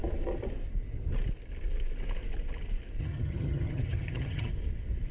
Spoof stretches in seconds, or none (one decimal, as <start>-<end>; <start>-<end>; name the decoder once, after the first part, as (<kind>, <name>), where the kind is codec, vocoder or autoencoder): 3.0-4.5 (vocoder, HiFi-GAN)